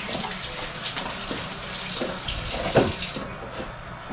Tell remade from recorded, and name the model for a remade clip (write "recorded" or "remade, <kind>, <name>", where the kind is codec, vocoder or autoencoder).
recorded